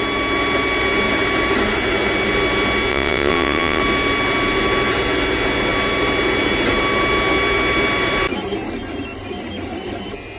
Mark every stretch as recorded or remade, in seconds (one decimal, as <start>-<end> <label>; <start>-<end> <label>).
0.0-2.9 recorded; 2.9-3.8 remade; 3.8-10.4 recorded